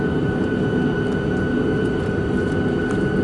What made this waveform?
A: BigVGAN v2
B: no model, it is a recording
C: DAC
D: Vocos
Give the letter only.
B